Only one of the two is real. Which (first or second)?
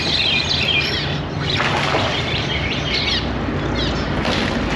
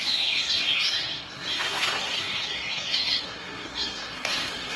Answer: first